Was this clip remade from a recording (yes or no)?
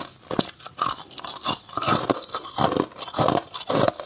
no